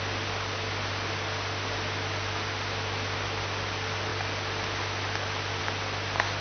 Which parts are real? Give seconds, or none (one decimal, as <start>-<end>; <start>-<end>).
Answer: 0.0-6.4